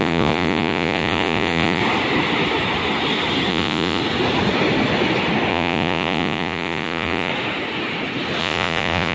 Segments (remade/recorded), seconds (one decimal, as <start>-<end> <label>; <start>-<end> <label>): 0.0-1.8 remade; 1.8-3.5 recorded; 3.5-4.0 remade; 4.0-5.5 recorded; 5.5-7.3 remade; 7.3-8.4 recorded; 8.4-9.1 remade